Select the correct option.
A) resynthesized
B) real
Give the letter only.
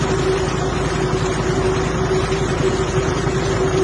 B